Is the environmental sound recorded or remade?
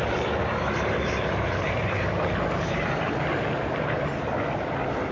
remade